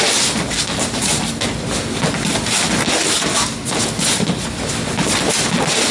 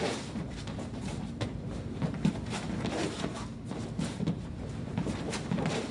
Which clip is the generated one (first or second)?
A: second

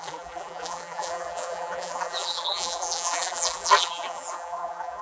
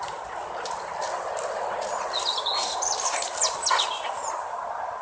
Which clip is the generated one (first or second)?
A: first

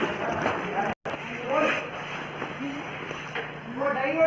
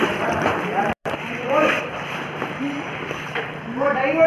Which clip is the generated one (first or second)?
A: second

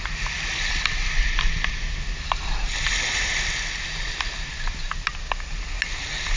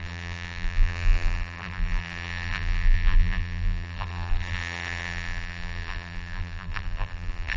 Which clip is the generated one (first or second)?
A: second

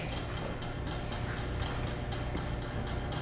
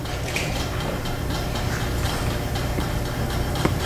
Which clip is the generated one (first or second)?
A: second